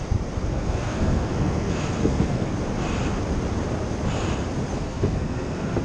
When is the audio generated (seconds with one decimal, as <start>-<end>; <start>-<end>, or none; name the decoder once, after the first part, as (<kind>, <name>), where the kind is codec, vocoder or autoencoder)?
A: 0.5-2.5 (codec, SNAC); 4.7-5.8